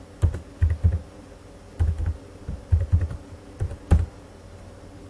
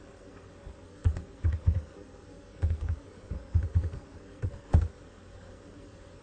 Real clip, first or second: first